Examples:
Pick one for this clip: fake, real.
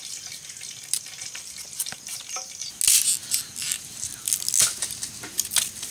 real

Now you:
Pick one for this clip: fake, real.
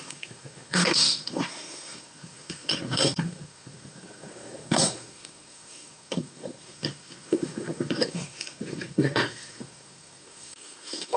fake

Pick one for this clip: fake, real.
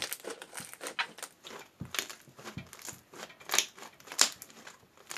real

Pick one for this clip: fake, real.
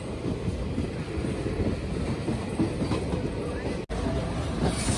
real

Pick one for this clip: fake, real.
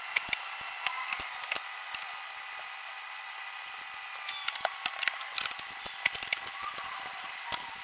real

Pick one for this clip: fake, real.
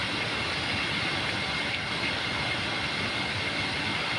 real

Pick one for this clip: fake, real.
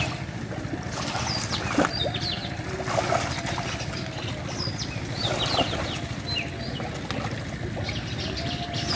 real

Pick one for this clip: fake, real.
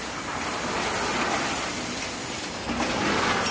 real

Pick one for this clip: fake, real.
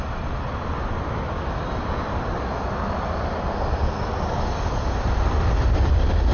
real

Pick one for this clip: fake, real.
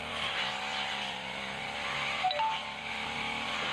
real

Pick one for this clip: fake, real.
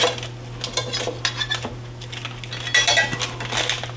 real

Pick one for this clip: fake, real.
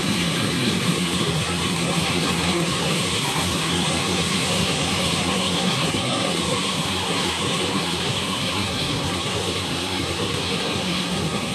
fake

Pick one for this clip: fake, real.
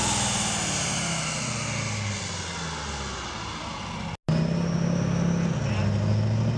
real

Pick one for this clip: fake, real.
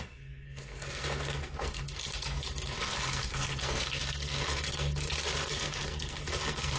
fake